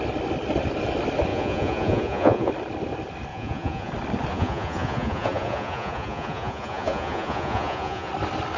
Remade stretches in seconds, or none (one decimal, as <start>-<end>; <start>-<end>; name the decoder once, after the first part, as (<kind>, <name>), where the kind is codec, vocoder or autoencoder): 1.3-2.5 (vocoder, Vocos); 3.3-3.9; 4.3-8.1